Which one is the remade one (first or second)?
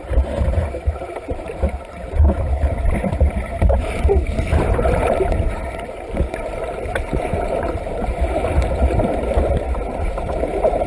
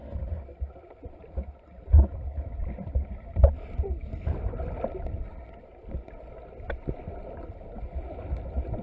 first